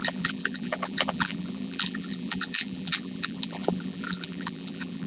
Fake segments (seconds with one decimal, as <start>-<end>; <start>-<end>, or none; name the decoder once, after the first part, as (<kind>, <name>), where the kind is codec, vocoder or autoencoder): 0.0-5.1 (vocoder, BigVGAN v2)